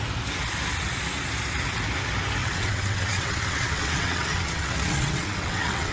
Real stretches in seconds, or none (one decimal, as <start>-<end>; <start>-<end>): 0.0-2.4